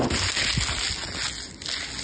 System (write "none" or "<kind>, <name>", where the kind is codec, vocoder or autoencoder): none